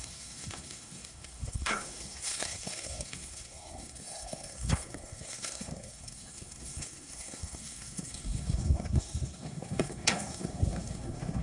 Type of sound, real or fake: fake